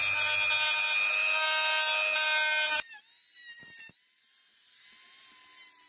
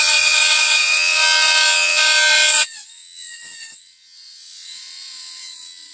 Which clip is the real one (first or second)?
first